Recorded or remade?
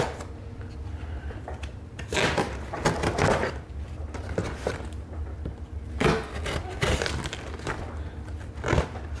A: recorded